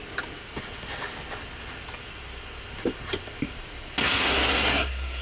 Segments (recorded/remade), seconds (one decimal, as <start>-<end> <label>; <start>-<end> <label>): 0.0-4.0 recorded; 4.0-5.2 remade